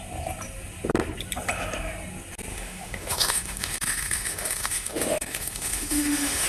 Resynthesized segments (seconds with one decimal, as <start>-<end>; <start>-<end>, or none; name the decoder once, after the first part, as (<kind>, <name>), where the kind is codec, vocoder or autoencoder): 2.5-6.5 (autoencoder, DAC-VAE)